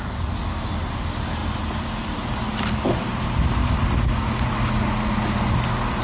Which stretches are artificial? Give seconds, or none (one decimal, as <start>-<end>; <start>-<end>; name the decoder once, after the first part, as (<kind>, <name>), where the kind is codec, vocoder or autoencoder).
none